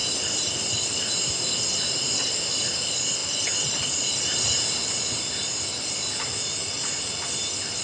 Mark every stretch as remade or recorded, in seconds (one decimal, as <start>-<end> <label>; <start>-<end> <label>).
0.0-7.8 recorded